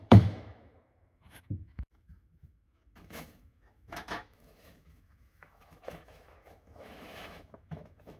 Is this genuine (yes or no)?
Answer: no